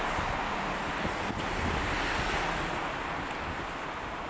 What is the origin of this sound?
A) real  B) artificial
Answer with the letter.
A